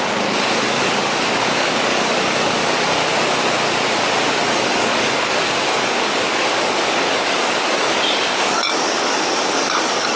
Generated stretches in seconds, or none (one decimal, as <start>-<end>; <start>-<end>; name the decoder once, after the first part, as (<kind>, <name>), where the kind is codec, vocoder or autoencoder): 0.0-3.0 (codec, DAC); 4.4-10.2